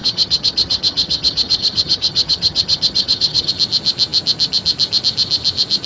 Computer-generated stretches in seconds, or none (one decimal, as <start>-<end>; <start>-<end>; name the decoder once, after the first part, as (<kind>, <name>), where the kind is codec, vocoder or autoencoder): 0.0-3.5 (vocoder, HiFi-GAN)